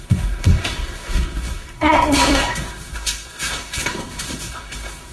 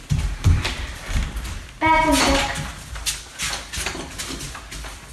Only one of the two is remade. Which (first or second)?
first